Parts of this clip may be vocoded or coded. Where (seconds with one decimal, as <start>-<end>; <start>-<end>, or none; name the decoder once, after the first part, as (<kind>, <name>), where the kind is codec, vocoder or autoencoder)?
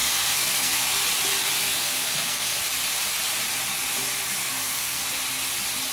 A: 0.0-1.0 (codec, SNAC); 1.6-2.6; 4.4-5.0